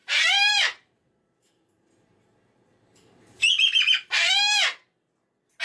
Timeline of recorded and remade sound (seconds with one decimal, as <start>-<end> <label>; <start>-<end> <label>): 0.0-1.9 remade; 1.9-2.7 recorded; 2.7-3.5 remade; 3.5-5.6 recorded